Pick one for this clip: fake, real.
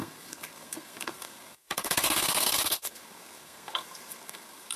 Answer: fake